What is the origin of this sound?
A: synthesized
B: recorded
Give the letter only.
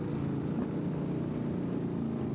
B